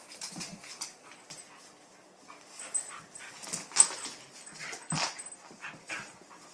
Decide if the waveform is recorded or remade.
recorded